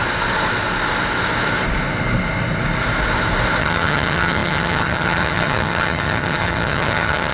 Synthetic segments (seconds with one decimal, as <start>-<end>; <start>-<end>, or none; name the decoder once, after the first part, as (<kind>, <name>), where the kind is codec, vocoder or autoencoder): 3.6-7.3 (vocoder, HiFi-GAN)